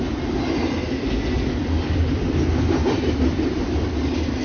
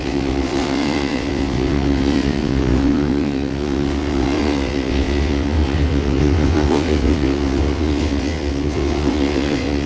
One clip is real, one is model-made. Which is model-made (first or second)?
second